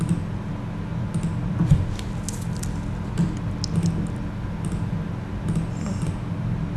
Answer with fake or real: real